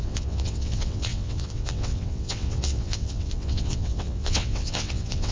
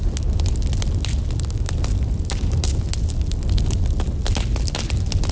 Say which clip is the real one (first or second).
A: second